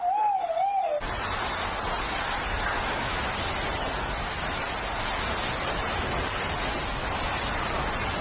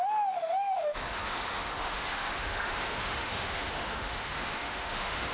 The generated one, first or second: second